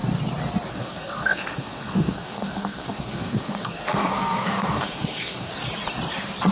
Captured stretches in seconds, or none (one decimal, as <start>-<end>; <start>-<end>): 0.0-0.7; 5.5-6.5

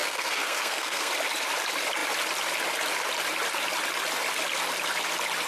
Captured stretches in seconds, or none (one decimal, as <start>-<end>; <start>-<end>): 1.1-5.5

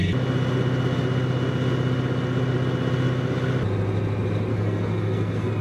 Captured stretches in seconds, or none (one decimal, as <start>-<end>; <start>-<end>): 0.0-4.5

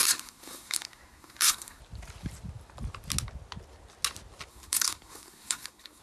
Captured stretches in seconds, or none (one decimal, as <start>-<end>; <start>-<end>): 1.8-4.5

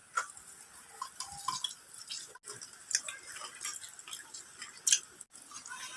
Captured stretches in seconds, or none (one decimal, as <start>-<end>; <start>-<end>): 0.0-6.0

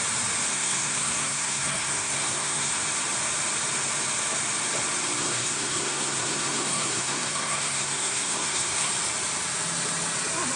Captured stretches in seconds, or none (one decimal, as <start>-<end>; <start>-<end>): 0.0-0.5; 2.7-5.2; 8.9-10.6

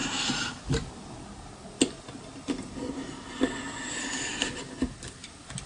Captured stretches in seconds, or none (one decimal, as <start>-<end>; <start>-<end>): 0.0-5.7

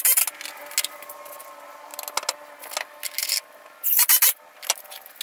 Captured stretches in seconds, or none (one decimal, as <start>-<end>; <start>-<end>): 0.0-5.2